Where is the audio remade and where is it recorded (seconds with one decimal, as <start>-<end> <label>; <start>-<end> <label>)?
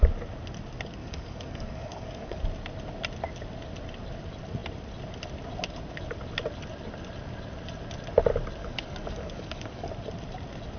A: 0.0-1.0 recorded; 1.0-2.4 remade; 2.4-8.6 recorded; 8.6-9.9 remade; 9.9-10.8 recorded